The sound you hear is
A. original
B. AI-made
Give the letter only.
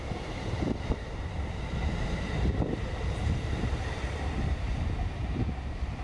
B